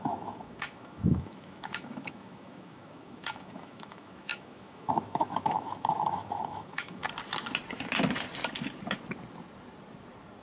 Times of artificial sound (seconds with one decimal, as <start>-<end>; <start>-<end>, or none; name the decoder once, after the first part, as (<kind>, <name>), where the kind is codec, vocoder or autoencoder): 0.0-7.0 (autoencoder, DAC-VAE)

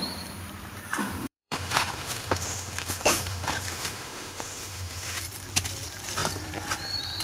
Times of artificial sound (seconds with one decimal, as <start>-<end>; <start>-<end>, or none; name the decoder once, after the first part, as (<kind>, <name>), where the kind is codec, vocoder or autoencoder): 1.0-5.2 (autoencoder, DAC-VAE)

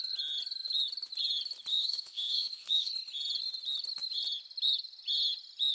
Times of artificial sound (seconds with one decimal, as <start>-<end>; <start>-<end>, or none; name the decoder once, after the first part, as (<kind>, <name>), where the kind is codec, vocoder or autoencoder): 1.7-2.9 (autoencoder, DAC-VAE)